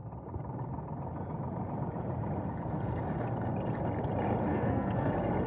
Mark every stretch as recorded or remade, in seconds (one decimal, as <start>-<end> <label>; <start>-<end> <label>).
0.0-4.5 recorded; 4.5-5.1 remade; 5.1-5.5 recorded